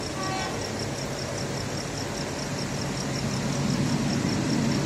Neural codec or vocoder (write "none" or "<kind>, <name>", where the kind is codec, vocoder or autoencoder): none